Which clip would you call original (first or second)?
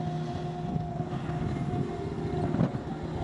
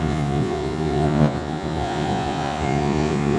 first